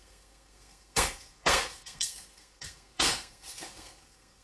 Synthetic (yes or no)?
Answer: yes